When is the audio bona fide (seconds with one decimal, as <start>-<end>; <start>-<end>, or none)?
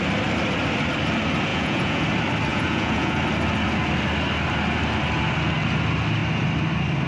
0.0-1.5; 2.0-2.5; 3.2-7.1